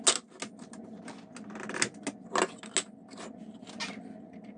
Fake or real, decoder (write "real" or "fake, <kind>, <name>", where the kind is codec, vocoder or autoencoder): real